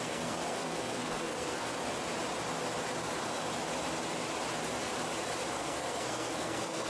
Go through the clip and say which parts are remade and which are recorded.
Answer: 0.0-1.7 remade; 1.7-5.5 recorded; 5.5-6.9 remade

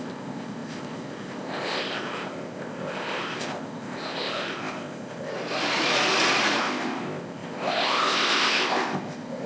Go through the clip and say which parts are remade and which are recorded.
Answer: 0.0-5.3 remade; 5.3-6.6 recorded; 6.6-9.5 remade

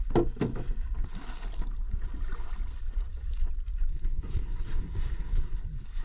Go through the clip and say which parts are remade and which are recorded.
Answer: 0.0-3.9 recorded; 3.9-5.6 remade; 5.6-6.0 recorded